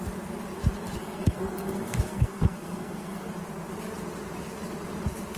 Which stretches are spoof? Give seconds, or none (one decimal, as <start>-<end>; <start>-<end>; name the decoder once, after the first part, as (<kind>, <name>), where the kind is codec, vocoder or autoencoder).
1.0-3.3 (codec, SNAC)